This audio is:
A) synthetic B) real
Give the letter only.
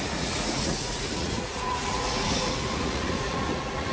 A